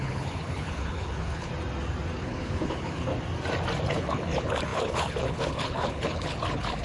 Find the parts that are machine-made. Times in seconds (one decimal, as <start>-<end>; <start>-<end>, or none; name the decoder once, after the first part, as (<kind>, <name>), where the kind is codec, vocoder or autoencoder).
0.0-1.5 (codec, HILCodec); 2.2-3.1; 3.9-6.8